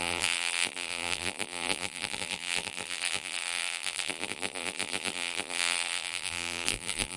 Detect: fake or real fake